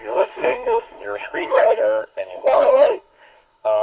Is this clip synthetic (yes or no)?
yes